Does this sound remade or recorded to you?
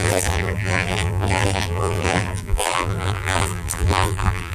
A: remade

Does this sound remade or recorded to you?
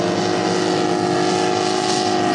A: recorded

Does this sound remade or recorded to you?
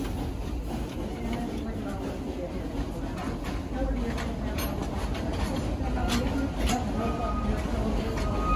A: recorded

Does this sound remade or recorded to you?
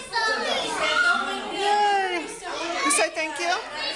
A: recorded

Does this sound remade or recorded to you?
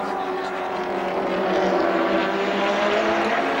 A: recorded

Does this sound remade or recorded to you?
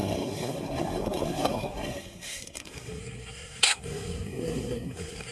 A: remade